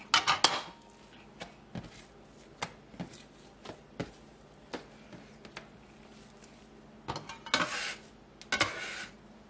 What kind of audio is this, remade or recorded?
recorded